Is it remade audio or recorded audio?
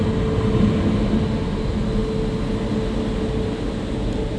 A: recorded